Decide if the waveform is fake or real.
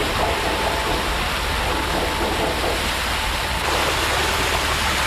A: real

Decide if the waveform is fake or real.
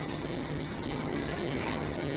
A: fake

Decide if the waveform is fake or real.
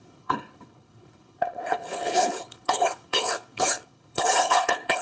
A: fake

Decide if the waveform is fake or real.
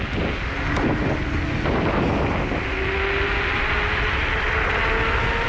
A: real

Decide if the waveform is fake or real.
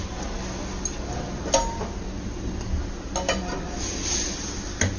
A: real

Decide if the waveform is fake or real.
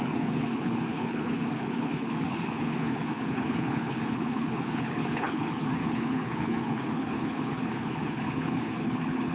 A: fake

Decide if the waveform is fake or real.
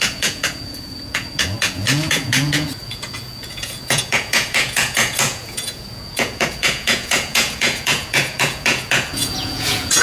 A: fake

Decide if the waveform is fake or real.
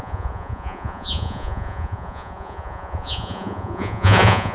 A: fake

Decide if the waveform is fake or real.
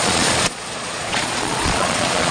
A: fake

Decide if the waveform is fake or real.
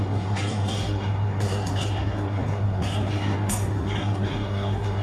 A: fake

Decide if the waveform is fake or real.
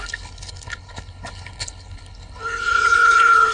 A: fake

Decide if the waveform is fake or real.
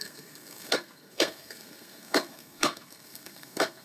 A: fake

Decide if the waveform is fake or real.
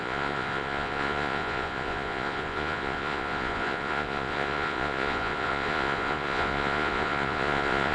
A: fake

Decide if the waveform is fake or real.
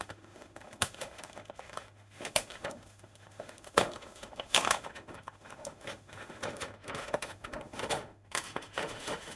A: fake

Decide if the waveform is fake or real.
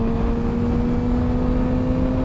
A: real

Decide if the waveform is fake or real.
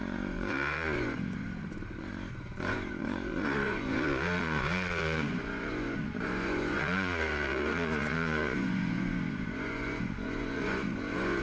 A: fake